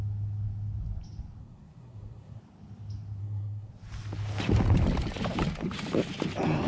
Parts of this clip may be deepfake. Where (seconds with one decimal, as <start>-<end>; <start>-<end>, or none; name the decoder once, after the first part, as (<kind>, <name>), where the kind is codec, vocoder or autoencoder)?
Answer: 1.4-2.4 (codec, SNAC); 3.2-3.7